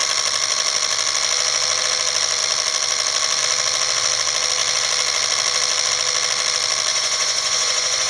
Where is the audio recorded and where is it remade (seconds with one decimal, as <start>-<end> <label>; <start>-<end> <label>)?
0.0-6.9 recorded; 6.9-8.1 remade